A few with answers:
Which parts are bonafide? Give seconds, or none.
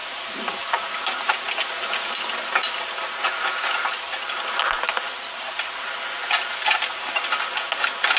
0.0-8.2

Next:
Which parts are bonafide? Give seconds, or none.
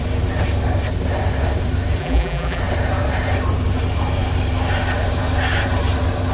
0.0-2.0; 2.6-6.3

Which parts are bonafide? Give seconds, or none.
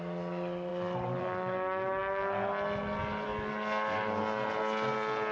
0.0-5.3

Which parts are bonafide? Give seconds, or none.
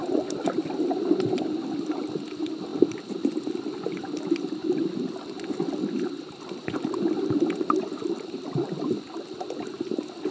0.0-2.7; 6.5-8.0; 9.2-10.3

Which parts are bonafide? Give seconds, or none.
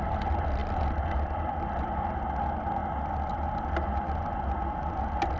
0.0-5.4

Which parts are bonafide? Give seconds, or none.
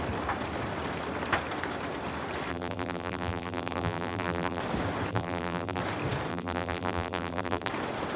0.0-2.5; 4.6-5.1; 5.8-6.3; 7.7-8.2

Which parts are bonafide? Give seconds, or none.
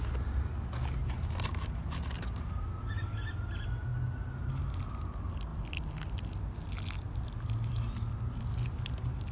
0.0-5.5; 8.5-9.3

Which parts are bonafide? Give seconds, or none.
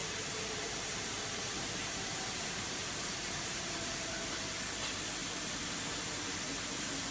4.3-5.2; 5.7-7.1